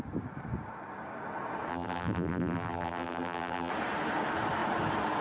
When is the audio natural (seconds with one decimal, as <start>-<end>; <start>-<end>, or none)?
0.0-1.7; 3.7-5.2